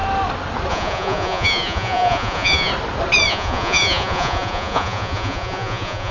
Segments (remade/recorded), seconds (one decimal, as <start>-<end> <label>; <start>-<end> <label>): 0.0-0.7 recorded; 0.7-2.7 remade; 2.7-3.3 recorded; 3.3-6.1 remade